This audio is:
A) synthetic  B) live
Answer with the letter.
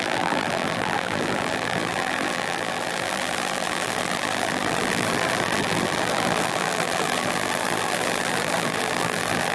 A